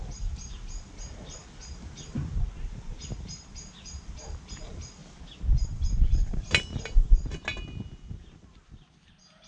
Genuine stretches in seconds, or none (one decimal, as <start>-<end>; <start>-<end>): 0.0-9.5